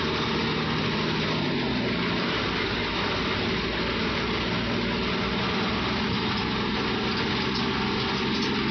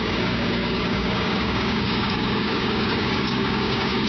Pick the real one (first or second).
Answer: first